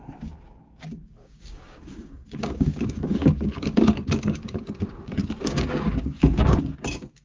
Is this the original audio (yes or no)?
no